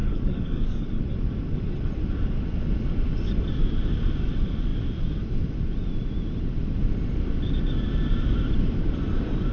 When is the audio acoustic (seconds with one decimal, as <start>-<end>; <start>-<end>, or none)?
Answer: 1.0-9.5